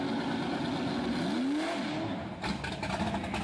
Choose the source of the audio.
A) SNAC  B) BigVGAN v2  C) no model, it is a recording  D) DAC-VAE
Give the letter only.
C